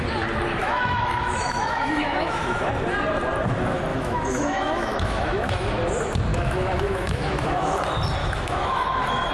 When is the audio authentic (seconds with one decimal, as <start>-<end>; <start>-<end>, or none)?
0.0-0.6; 2.7-3.9; 5.7-6.3; 7.8-8.2